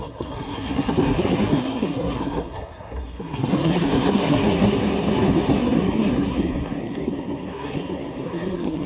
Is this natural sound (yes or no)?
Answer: no